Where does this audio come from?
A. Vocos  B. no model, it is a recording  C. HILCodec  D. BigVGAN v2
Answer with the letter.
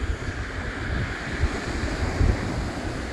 B